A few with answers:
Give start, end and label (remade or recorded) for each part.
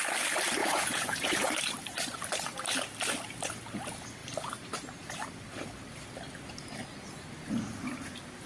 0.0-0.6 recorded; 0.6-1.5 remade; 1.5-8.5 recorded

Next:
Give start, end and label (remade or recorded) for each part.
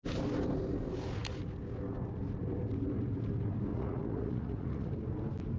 0.0-3.7 recorded; 3.7-4.9 remade; 4.9-5.6 recorded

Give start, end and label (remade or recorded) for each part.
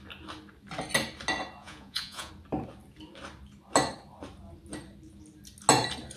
0.0-1.6 recorded; 1.6-2.3 remade; 2.3-6.2 recorded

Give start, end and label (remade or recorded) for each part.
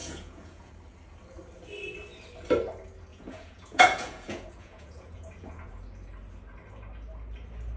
0.0-0.7 remade; 0.7-3.1 recorded; 3.1-5.7 remade; 5.7-7.8 recorded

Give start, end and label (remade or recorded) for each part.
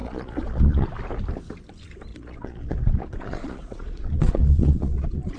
0.0-0.9 remade; 0.9-2.1 recorded; 2.1-5.4 remade